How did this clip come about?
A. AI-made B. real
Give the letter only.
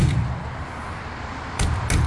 B